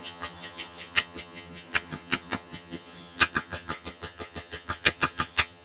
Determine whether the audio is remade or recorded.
remade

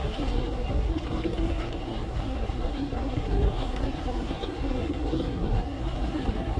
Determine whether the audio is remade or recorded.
remade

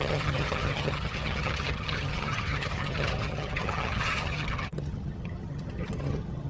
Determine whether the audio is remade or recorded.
remade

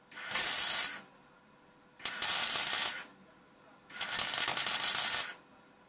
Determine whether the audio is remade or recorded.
recorded